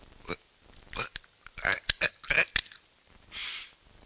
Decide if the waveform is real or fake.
real